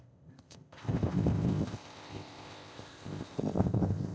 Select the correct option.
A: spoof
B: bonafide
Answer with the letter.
A